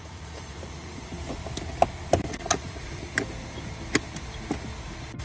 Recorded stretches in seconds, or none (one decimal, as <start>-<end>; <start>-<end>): 1.1-2.3; 3.0-5.2